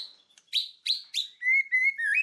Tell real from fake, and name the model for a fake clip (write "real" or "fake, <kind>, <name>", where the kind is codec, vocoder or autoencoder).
real